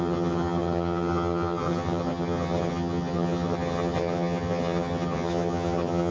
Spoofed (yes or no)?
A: yes